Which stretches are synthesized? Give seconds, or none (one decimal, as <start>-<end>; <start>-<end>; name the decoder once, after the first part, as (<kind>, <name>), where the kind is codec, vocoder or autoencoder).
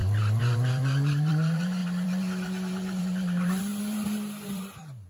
0.0-5.1 (vocoder, BigVGAN v2)